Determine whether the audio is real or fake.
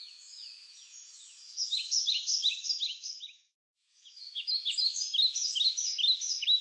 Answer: fake